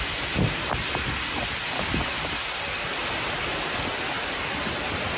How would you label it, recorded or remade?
recorded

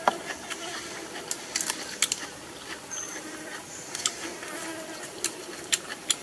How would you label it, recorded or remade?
recorded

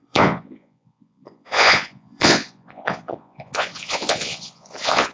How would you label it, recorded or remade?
remade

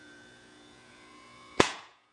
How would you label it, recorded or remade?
remade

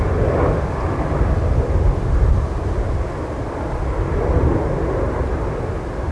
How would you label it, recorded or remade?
recorded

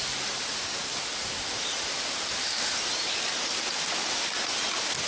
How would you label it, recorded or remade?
recorded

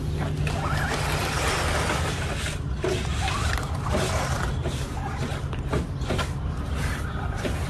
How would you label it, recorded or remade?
recorded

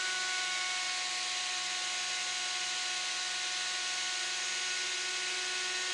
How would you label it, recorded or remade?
recorded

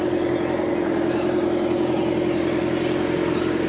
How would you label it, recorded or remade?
recorded